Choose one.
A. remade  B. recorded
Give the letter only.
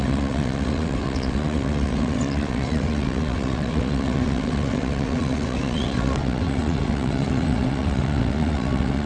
A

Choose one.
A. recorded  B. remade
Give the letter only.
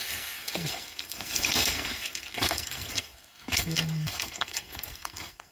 B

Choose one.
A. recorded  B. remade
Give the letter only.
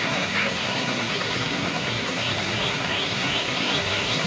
B